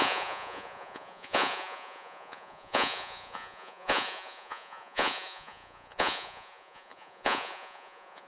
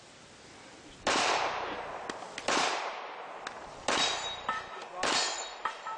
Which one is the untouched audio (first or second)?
second